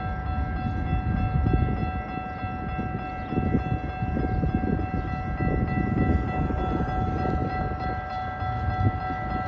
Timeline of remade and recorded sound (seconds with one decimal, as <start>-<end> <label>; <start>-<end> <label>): 0.0-9.5 recorded